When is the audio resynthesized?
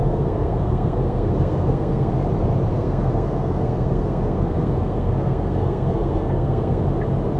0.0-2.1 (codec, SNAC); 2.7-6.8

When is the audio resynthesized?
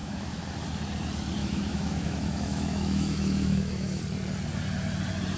0.0-0.5 (autoencoder, DAC-VAE); 1.4-4.0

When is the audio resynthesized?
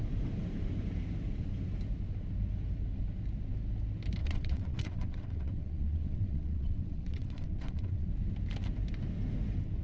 4.2-8.1 (vocoder, WaveNeXt)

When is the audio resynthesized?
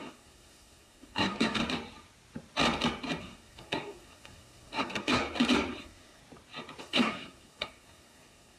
0.0-1.6 (codec, SNAC); 3.2-5.2; 5.8-6.2; 6.8-8.6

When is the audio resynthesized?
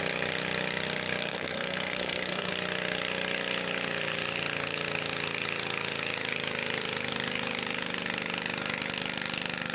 1.3-2.5 (codec, SNAC)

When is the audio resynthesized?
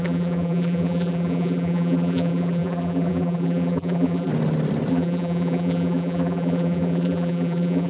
0.0-4.3 (vocoder, BigVGAN v2); 4.9-7.9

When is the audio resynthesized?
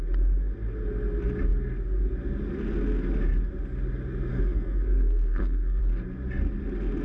4.3-5.8 (codec, SNAC)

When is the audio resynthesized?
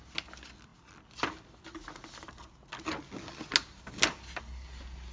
none